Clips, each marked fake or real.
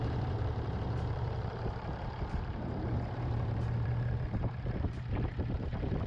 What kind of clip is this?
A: fake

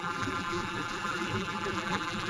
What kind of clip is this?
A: fake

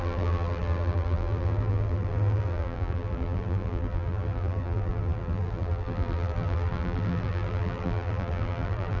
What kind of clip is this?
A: fake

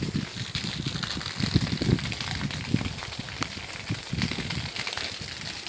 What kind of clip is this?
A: real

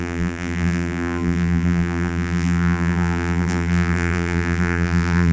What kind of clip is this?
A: fake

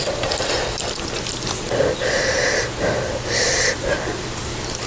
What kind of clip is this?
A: real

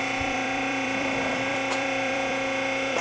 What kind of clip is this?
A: fake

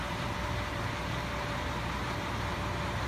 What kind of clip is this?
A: fake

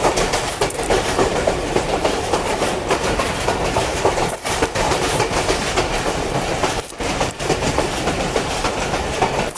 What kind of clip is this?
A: fake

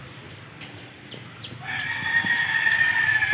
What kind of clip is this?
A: fake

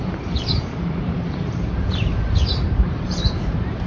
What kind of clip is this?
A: fake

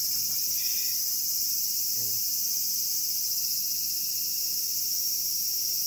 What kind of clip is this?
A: fake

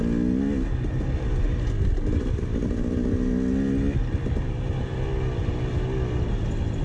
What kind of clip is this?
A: real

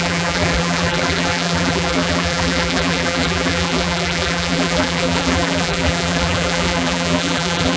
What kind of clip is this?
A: fake